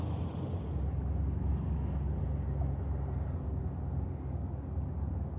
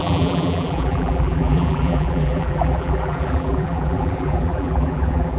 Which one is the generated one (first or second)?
second